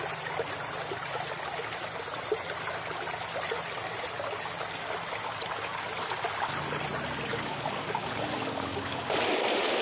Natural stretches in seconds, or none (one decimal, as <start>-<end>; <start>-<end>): 0.0-7.3; 9.2-9.8